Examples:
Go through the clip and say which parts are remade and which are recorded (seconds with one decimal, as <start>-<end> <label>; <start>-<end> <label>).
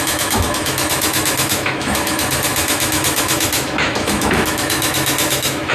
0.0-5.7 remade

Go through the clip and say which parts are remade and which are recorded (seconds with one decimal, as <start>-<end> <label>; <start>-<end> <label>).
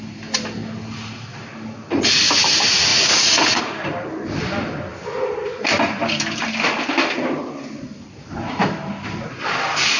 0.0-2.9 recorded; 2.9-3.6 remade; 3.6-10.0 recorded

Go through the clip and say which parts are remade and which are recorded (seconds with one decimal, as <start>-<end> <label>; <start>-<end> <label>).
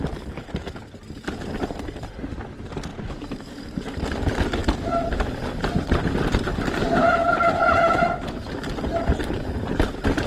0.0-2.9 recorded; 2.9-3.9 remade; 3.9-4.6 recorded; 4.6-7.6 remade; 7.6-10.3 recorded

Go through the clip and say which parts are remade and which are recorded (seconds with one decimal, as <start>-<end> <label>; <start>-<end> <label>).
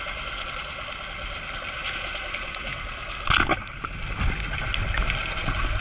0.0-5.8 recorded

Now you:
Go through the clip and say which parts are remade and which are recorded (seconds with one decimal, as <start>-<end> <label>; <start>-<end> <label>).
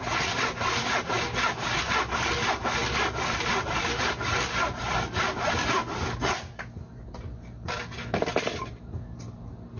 0.0-9.8 recorded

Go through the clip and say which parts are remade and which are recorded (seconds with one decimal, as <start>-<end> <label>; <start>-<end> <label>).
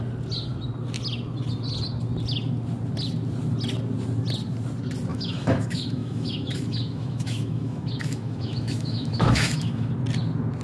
0.0-5.1 recorded; 5.1-9.9 remade; 9.9-10.6 recorded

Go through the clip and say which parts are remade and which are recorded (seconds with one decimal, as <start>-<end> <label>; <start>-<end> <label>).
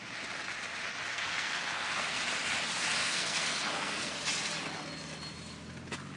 0.0-1.1 recorded; 1.1-2.2 remade; 2.2-3.0 recorded; 3.0-4.1 remade; 4.1-6.2 recorded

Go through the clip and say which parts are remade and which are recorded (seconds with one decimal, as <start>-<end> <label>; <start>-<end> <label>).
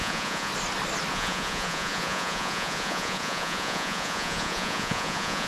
0.0-0.5 remade; 0.5-1.1 recorded; 1.1-5.5 remade